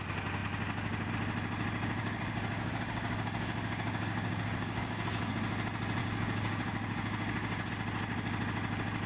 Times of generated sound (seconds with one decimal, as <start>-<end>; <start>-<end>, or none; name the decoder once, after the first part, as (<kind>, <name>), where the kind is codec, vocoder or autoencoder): 2.0-5.3 (codec, DAC); 6.0-7.7